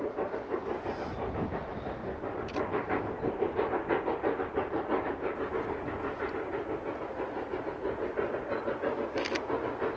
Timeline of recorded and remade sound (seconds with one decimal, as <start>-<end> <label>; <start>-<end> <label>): 0.0-10.0 recorded